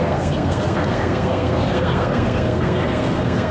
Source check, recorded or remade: remade